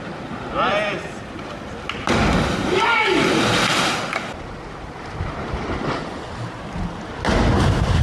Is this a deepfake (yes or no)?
no